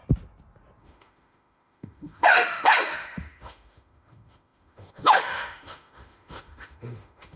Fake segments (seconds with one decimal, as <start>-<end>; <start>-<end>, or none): 0.8-7.4